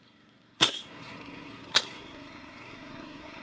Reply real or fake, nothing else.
fake